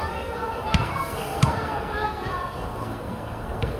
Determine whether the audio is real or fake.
fake